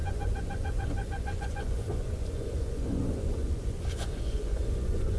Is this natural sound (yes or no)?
no